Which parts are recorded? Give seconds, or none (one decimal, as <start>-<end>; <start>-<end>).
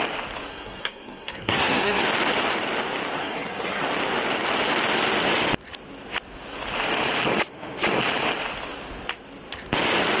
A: 0.0-0.5; 2.0-3.2; 3.8-10.2